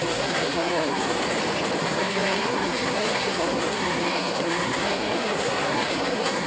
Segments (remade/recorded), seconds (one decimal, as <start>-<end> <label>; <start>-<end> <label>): 0.0-1.2 remade; 1.2-1.8 recorded; 1.8-6.5 remade